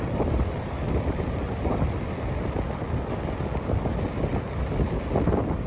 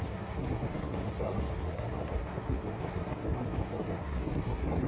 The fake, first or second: second